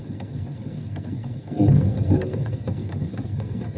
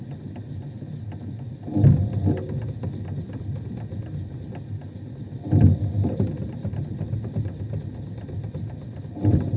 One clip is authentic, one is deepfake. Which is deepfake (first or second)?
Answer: first